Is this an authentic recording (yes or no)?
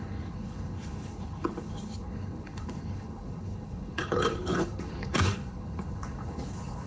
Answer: no